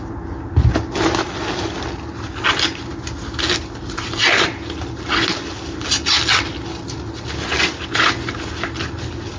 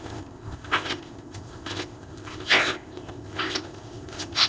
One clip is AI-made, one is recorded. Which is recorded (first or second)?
first